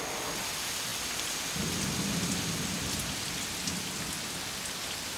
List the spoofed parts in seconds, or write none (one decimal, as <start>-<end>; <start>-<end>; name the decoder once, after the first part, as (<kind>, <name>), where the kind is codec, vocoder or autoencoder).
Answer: none